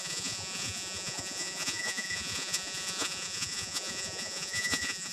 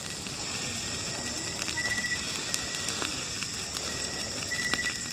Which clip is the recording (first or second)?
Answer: second